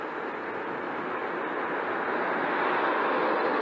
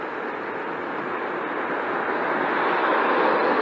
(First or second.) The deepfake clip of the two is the second